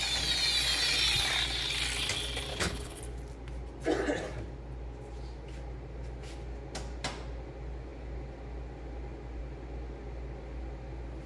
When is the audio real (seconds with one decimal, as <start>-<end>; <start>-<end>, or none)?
0.0-2.5; 3.0-11.3